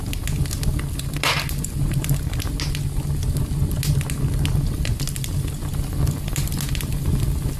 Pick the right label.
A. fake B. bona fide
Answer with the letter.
B